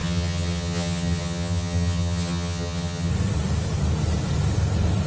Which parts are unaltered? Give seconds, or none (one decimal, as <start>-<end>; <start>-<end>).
3.1-5.1